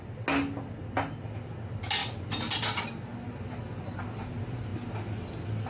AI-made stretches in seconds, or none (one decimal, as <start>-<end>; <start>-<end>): none